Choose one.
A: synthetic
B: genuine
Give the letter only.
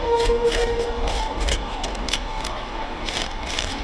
A